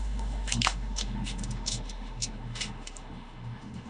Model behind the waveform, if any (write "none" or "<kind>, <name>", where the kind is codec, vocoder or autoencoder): autoencoder, DAC-VAE